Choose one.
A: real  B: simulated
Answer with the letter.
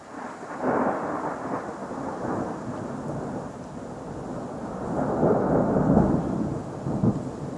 A